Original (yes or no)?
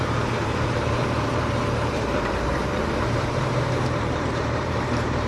no